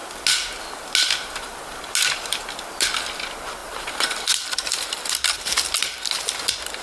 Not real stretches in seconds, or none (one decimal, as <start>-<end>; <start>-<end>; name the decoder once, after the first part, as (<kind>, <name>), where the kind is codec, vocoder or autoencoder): 3.6-6.3 (vocoder, BigVGAN v2)